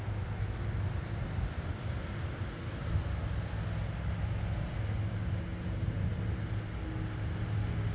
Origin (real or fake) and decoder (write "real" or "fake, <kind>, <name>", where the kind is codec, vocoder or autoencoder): real